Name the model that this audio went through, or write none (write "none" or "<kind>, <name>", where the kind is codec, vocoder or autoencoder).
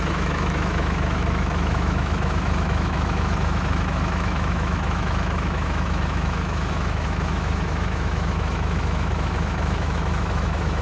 autoencoder, DAC-VAE